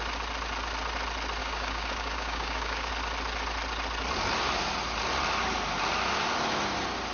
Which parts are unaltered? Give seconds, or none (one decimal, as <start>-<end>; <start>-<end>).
0.0-1.4; 2.9-7.1